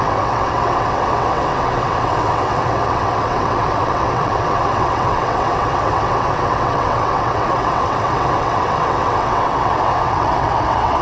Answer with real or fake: fake